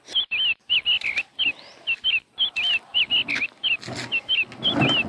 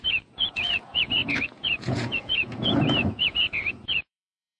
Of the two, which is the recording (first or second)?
first